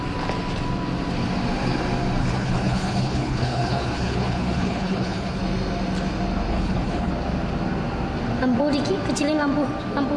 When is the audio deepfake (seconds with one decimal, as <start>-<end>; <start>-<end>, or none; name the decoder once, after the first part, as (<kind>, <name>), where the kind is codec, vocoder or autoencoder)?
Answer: 2.2-5.4 (codec, HILCodec); 6.5-7.1